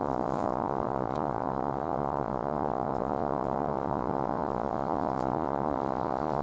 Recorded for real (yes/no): no